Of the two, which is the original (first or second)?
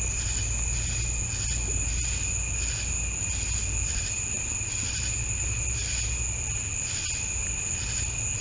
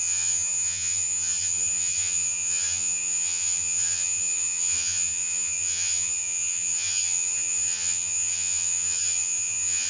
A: first